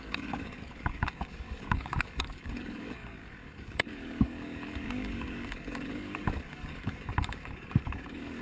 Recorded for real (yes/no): no